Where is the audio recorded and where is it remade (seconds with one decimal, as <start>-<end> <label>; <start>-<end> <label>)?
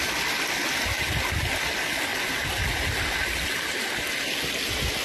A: 0.0-5.0 recorded